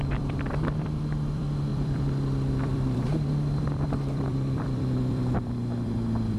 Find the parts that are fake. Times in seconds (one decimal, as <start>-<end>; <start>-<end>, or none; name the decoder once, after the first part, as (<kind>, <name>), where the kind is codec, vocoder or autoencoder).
0.0-6.4 (vocoder, BigVGAN v2)